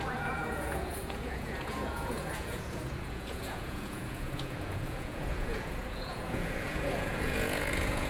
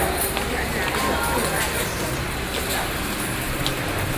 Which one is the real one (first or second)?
second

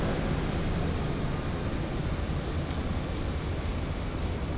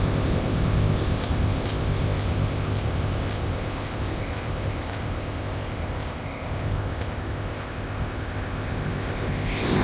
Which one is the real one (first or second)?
first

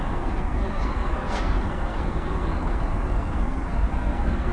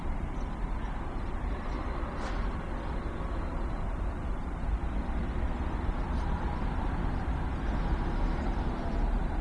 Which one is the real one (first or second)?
second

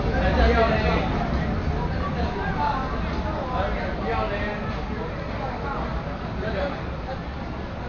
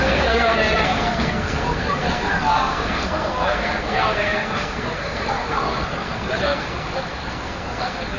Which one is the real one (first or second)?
first